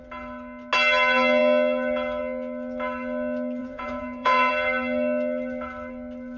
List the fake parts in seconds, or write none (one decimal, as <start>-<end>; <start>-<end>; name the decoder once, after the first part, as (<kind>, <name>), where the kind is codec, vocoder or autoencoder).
3.6-4.5 (vocoder, Vocos)